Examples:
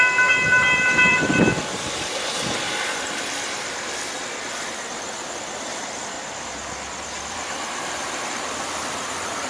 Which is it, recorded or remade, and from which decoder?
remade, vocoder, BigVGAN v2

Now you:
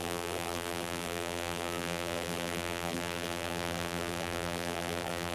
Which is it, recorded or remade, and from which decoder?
remade, vocoder, BigVGAN v2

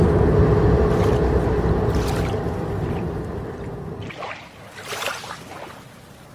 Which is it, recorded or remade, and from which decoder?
recorded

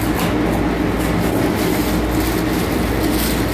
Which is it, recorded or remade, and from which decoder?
recorded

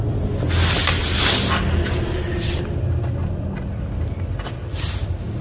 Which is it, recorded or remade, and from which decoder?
recorded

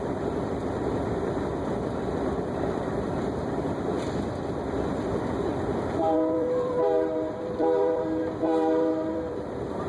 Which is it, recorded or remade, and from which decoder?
remade, vocoder, BigVGAN v2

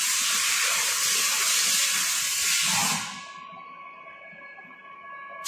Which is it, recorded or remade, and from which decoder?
recorded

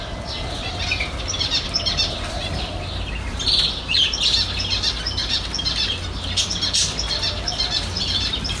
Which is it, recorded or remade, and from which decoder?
recorded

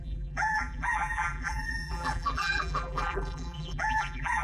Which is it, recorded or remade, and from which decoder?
remade, vocoder, BigVGAN v2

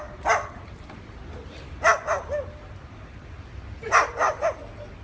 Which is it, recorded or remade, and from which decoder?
recorded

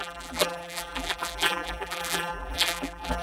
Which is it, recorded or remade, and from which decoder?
remade, vocoder, BigVGAN v2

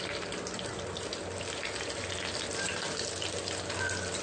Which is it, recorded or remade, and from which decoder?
recorded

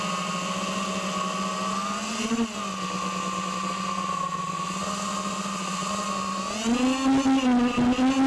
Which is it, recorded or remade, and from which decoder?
recorded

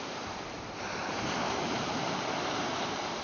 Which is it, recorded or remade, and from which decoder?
remade, vocoder, BigVGAN v2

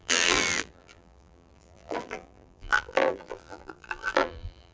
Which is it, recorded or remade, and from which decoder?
remade, vocoder, BigVGAN v2